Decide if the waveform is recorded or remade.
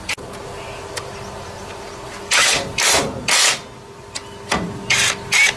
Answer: recorded